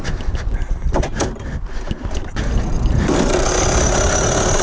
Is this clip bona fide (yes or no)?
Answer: yes